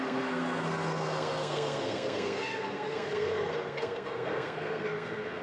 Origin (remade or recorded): remade